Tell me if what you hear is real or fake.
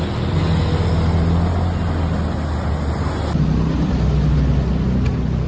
real